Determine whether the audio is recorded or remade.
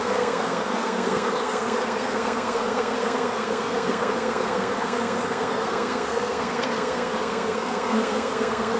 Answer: remade